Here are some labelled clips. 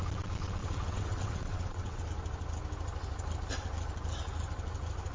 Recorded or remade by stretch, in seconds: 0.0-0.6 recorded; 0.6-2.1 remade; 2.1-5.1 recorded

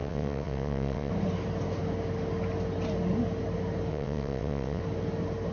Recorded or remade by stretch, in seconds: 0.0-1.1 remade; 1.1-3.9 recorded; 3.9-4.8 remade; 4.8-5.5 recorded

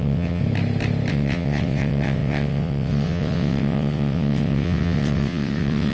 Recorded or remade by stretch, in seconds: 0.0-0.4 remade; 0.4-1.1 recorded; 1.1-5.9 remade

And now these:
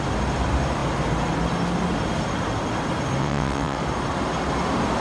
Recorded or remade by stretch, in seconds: 0.0-3.2 recorded; 3.2-3.8 remade; 3.8-5.0 recorded